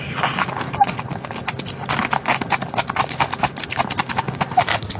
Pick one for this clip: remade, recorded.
recorded